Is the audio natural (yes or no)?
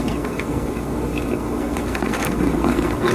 no